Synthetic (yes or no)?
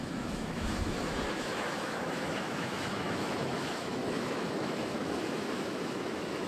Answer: yes